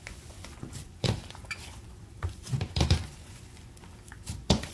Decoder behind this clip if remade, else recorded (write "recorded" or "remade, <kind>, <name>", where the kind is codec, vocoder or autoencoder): remade, vocoder, Vocos